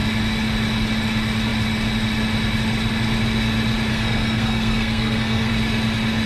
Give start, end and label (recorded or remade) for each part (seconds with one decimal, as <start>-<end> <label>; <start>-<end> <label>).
0.0-3.9 recorded; 3.9-5.5 remade; 5.5-6.3 recorded